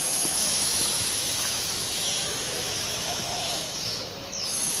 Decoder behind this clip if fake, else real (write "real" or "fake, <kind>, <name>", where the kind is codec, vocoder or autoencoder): fake, autoencoder, DAC-VAE